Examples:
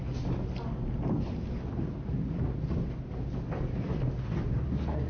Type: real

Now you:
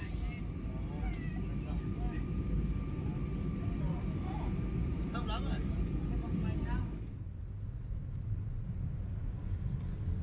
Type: real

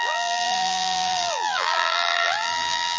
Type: fake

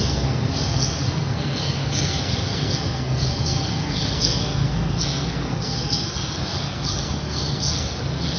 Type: fake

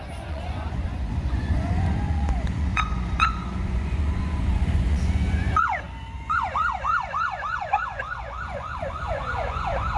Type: fake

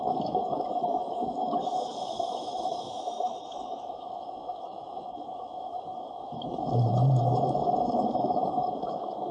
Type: fake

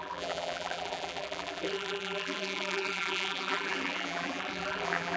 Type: fake